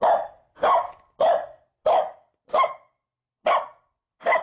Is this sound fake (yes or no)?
no